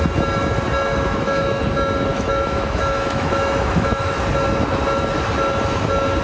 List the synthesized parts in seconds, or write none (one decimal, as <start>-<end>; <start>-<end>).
0.9-1.6; 2.1-4.1